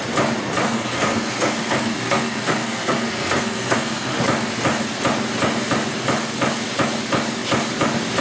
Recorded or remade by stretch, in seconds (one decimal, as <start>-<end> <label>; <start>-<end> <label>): 0.0-0.6 recorded; 0.6-4.2 remade; 4.2-8.2 recorded